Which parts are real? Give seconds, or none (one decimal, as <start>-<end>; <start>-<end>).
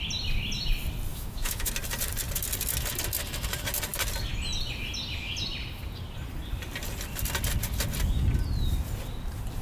0.0-1.1; 1.7-9.6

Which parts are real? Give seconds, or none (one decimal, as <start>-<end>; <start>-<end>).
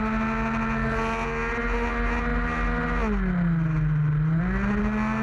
0.0-5.2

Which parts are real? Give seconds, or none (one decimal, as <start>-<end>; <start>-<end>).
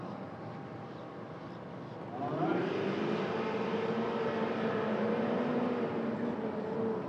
0.0-2.5; 3.3-7.1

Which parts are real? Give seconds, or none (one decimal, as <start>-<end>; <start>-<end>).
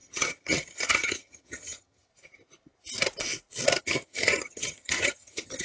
2.1-3.8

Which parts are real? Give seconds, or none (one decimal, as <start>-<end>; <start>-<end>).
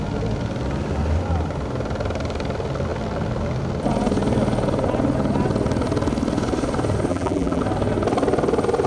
0.0-7.1; 7.6-8.9